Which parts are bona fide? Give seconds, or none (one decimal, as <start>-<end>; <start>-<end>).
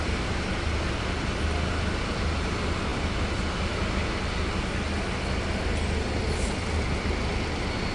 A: 0.0-7.9